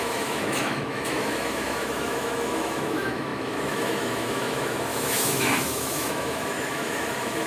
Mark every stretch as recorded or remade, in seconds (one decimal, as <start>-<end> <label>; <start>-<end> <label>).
0.0-7.5 remade